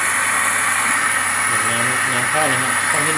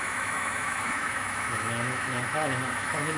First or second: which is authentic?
first